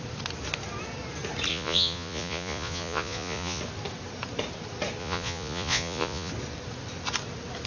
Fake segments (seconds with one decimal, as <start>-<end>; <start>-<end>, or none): 1.5-3.6; 5.0-6.3

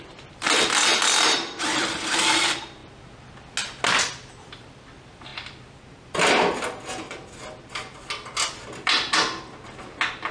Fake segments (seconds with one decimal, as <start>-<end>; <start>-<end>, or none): 0.0-0.9; 1.5-2.8; 4.0-5.3